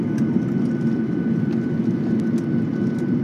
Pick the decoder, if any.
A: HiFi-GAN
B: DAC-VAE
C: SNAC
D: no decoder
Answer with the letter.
D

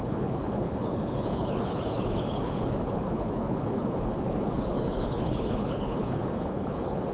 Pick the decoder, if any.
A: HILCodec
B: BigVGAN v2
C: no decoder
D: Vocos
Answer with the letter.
A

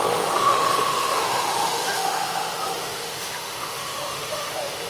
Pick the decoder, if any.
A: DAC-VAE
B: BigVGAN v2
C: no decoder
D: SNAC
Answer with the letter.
A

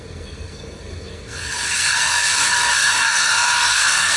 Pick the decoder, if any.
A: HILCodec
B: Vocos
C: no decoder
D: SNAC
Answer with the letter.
D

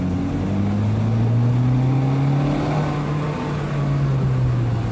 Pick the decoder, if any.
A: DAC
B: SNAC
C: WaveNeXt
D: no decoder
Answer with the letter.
D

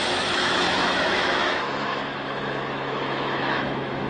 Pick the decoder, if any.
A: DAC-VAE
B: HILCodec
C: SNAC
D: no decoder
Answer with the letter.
A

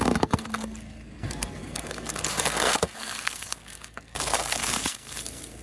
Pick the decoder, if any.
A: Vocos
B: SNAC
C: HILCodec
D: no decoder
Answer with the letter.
B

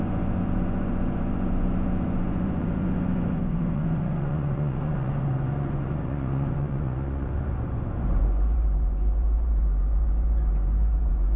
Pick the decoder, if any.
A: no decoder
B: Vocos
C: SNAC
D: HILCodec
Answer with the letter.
B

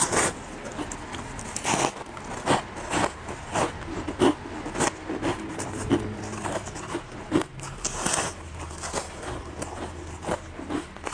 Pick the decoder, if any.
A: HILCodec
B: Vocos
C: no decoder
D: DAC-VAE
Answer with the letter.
C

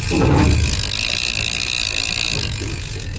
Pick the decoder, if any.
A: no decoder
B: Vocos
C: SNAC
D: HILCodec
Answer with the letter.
A